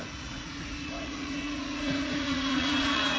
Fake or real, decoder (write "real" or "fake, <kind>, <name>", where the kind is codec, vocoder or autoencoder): fake, vocoder, Vocos